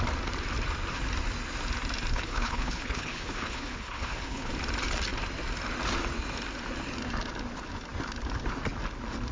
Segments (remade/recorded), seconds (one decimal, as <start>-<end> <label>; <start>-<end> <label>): 0.0-2.1 recorded; 2.1-4.5 remade; 4.5-9.3 recorded